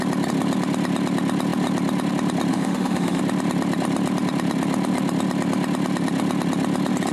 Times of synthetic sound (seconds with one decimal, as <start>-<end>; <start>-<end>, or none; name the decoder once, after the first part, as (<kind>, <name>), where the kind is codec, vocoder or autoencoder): 2.5-3.2 (autoencoder, DAC-VAE)